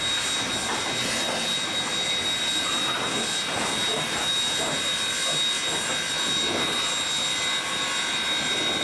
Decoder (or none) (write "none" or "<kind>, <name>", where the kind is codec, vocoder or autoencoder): none